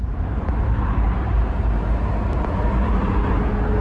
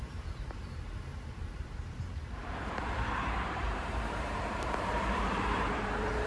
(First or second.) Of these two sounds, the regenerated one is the second